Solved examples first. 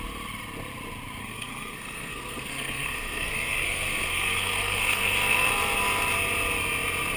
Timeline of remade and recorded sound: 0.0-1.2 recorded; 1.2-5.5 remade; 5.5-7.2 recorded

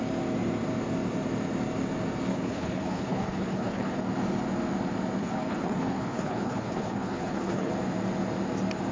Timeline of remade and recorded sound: 0.0-2.3 recorded; 2.3-4.0 remade; 4.0-5.2 recorded; 5.2-7.7 remade; 7.7-8.9 recorded

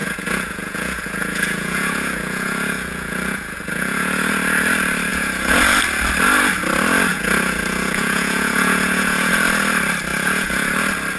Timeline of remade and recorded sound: 0.0-4.3 remade; 4.3-5.1 recorded; 5.1-5.6 remade; 5.6-7.1 recorded; 7.1-9.3 remade; 9.3-10.1 recorded; 10.1-10.7 remade; 10.7-11.2 recorded

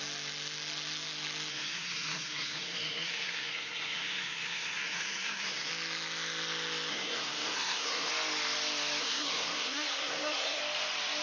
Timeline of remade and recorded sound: 0.0-1.5 recorded; 1.5-5.7 remade; 5.7-6.9 recorded; 6.9-8.1 remade; 8.1-9.0 recorded; 9.0-10.6 remade; 10.6-11.2 recorded